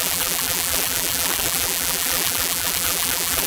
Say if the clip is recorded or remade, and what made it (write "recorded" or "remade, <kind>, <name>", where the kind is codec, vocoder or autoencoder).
remade, vocoder, BigVGAN v2